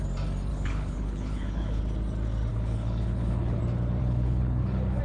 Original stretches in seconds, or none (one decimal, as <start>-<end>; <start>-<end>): 0.0-0.5; 1.8-2.5; 3.6-4.0